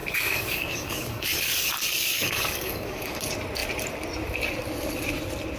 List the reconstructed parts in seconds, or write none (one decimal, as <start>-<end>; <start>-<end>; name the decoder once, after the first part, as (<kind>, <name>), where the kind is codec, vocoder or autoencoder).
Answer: 0.0-3.2 (codec, DAC)